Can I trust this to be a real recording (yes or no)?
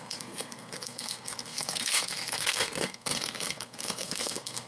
no